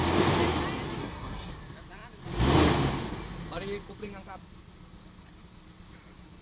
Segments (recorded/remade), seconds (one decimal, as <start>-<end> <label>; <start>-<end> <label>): 0.0-1.0 recorded; 1.0-1.5 remade; 1.5-6.4 recorded